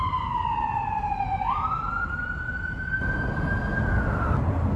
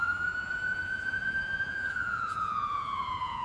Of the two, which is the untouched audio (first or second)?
first